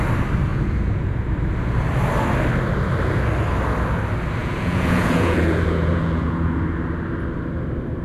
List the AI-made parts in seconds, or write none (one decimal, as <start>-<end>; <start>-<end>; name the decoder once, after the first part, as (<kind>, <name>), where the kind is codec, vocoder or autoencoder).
0.5-1.1 (vocoder, Vocos); 4.4-6.6